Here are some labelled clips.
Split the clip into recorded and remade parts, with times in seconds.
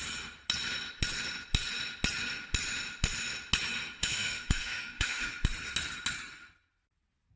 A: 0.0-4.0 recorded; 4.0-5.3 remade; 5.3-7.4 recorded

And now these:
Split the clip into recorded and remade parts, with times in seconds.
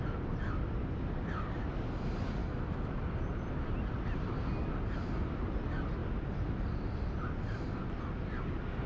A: 0.0-2.4 recorded; 2.4-3.0 remade; 3.0-8.9 recorded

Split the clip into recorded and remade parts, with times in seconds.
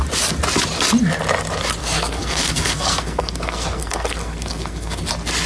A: 0.0-1.8 recorded; 1.8-5.1 remade; 5.1-5.5 recorded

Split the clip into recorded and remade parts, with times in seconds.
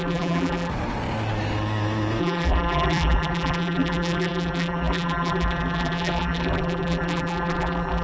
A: 0.0-0.7 remade; 0.7-2.2 recorded; 2.2-8.0 remade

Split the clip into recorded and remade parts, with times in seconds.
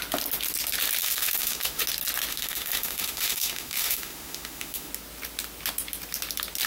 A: 0.0-1.0 recorded; 1.0-1.8 remade; 1.8-2.3 recorded; 2.3-4.9 remade; 4.9-6.7 recorded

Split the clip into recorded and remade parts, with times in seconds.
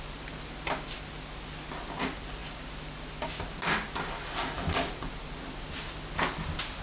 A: 0.0-6.8 recorded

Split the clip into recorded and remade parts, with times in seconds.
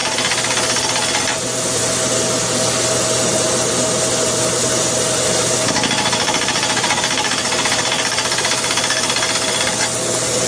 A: 0.0-10.5 recorded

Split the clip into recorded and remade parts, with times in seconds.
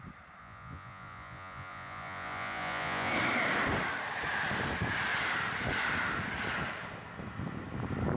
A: 0.0-0.4 recorded; 0.4-3.1 remade; 3.1-8.2 recorded